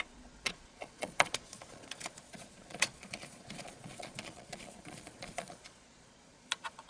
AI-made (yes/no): yes